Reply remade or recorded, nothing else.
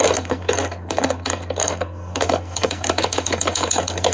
remade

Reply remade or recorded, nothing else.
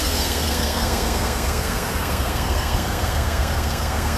remade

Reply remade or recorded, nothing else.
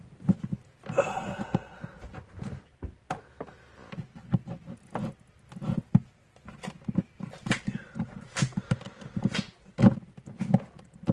recorded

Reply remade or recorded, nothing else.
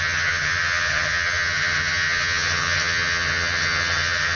remade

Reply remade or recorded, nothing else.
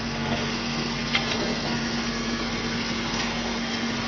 remade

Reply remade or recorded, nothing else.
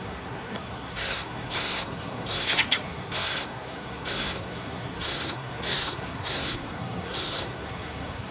remade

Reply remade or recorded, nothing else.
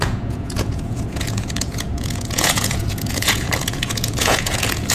remade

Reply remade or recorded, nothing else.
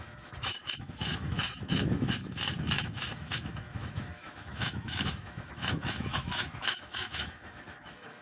remade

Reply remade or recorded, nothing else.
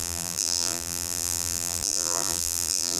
remade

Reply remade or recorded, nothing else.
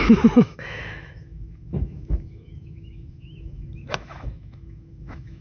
remade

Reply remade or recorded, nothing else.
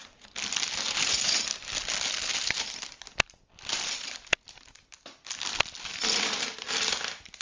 recorded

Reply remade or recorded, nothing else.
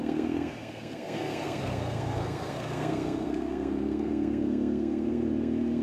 remade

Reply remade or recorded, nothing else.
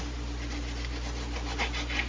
recorded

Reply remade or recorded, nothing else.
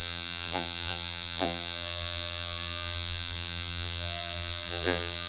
remade